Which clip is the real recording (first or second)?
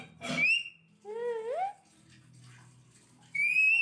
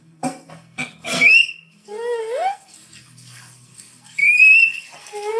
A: first